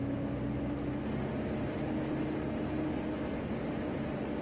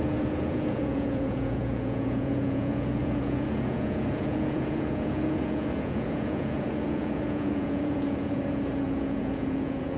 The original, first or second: first